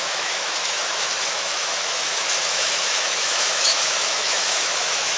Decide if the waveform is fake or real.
fake